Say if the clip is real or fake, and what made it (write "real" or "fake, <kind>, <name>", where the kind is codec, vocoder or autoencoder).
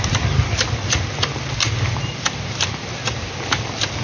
fake, vocoder, BigVGAN v2